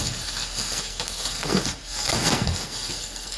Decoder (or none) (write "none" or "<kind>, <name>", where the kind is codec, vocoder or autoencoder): codec, SNAC